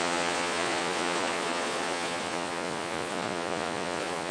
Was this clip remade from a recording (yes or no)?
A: yes